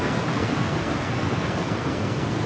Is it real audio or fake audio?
fake